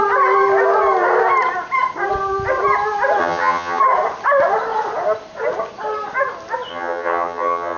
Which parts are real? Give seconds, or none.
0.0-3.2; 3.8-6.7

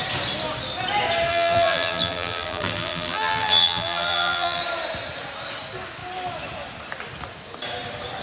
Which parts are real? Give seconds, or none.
0.0-1.3; 4.6-8.2

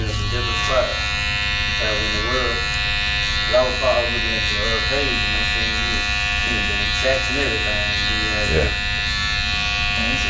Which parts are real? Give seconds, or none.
0.0-10.3

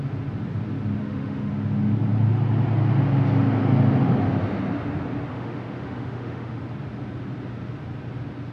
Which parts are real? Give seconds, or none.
0.0-1.0; 1.5-5.3; 6.6-8.5

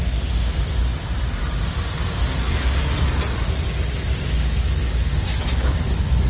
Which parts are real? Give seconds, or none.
0.0-0.9; 1.4-6.3

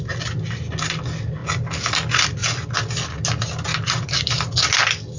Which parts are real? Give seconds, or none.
0.0-1.4; 1.9-5.2

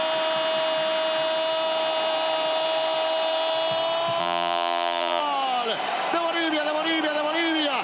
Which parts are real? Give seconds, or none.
0.0-4.2; 5.2-7.8